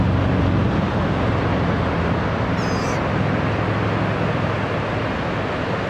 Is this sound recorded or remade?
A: recorded